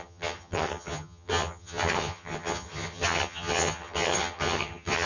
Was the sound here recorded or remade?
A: remade